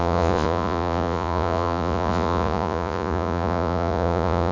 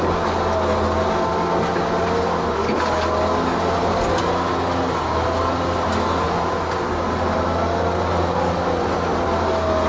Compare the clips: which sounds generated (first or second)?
first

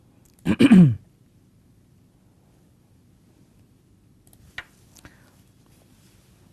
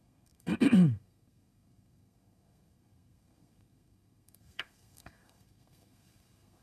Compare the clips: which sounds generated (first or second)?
second